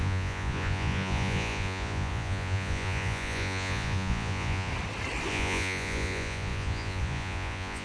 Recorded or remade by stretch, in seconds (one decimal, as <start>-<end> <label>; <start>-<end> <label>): 0.0-4.7 remade; 4.7-5.3 recorded; 5.3-7.8 remade